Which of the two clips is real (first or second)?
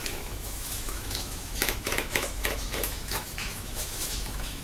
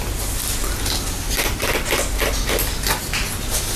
second